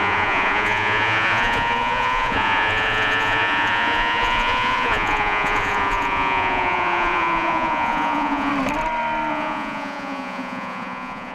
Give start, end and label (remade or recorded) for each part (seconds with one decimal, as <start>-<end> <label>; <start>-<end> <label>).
0.0-8.5 remade; 8.5-9.3 recorded; 9.3-11.3 remade